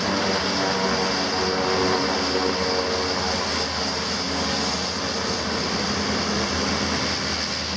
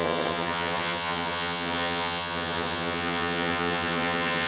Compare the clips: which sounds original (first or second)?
first